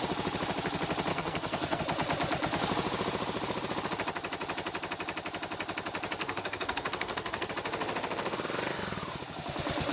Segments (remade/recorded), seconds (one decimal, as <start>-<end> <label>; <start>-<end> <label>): 0.0-1.1 recorded; 1.1-1.8 remade; 1.8-6.2 recorded; 6.2-7.5 remade; 7.5-9.9 recorded